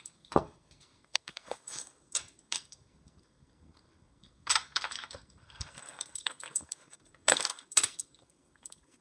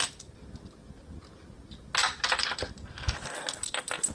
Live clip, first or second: second